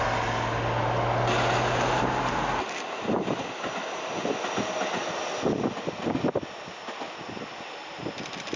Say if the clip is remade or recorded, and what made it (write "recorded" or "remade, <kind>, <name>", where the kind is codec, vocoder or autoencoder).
recorded